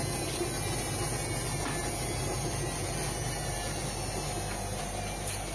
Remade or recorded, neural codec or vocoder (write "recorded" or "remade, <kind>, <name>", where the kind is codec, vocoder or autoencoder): recorded